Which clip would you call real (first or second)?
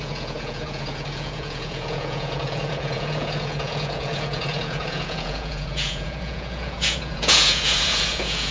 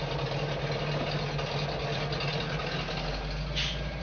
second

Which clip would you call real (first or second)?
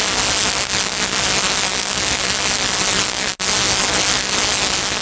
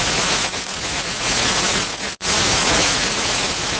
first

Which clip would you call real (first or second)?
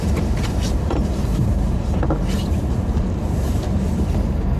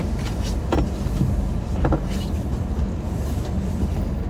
second